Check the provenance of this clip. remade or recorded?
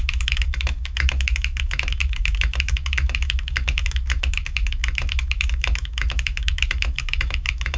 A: remade